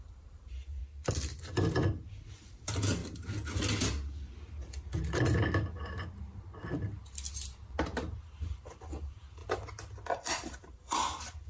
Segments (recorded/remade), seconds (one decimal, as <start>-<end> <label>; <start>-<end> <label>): 0.0-0.8 remade; 0.8-2.3 recorded; 2.3-3.0 remade; 3.0-8.2 recorded; 8.2-9.4 remade; 9.4-10.1 recorded; 10.1-11.5 remade